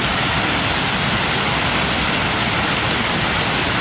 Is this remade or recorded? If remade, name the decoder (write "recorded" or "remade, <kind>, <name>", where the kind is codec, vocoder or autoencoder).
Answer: recorded